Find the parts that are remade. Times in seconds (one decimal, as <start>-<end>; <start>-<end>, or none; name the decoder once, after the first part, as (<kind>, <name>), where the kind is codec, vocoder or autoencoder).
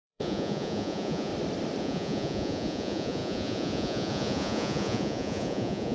0.0-1.3 (vocoder, Vocos); 1.8-5.9